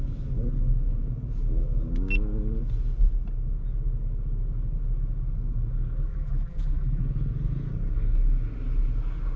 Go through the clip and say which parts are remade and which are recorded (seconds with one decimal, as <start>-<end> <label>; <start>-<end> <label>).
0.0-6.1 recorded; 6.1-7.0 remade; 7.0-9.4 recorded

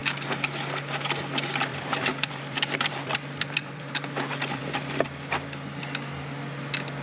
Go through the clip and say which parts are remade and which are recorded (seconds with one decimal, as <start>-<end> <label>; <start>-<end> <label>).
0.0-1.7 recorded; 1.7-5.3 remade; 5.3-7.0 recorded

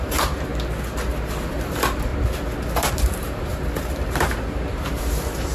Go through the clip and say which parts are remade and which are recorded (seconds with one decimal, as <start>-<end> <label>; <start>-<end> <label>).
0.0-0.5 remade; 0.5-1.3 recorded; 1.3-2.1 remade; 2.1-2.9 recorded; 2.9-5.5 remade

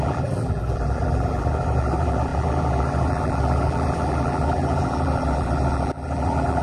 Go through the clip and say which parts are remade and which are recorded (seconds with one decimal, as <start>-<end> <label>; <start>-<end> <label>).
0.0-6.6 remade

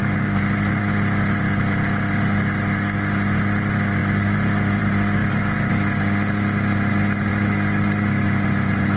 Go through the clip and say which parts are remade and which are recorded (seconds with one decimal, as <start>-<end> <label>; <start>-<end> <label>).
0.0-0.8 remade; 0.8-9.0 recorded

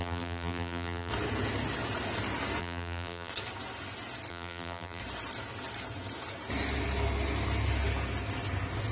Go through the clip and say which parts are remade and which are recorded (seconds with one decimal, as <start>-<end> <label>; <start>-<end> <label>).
0.0-1.1 remade; 1.1-2.6 recorded; 2.6-3.3 remade; 3.3-4.3 recorded; 4.3-5.0 remade; 5.0-8.9 recorded